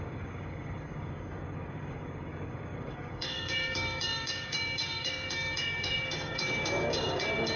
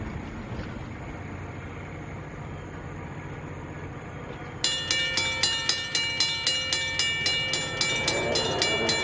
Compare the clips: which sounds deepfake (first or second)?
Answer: first